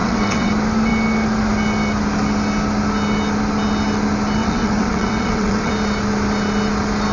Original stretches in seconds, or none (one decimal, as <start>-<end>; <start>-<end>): 0.5-4.4; 5.7-7.1